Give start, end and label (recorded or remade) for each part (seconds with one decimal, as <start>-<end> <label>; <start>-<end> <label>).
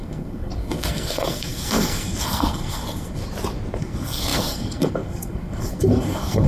0.0-3.2 remade; 3.2-3.8 recorded; 3.8-6.5 remade